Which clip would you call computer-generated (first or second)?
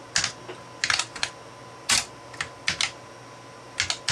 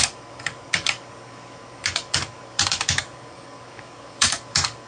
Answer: second